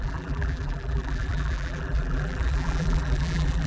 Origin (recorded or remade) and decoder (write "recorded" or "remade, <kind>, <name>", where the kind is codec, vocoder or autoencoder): remade, vocoder, BigVGAN v2